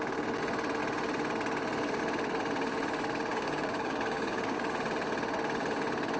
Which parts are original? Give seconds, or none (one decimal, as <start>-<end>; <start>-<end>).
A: 0.0-3.3; 4.6-6.2